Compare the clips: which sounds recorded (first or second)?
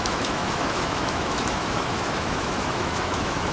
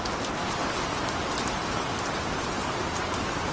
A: second